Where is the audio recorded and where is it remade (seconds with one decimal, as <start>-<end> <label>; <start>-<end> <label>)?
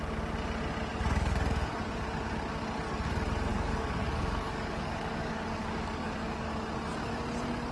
0.0-0.9 recorded; 0.9-1.7 remade; 1.7-3.5 recorded; 3.5-6.5 remade; 6.5-7.7 recorded